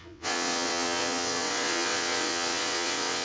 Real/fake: fake